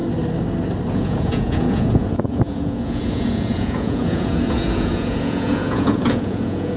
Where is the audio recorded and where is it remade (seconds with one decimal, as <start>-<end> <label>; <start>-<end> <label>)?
0.0-0.9 recorded; 0.9-6.8 remade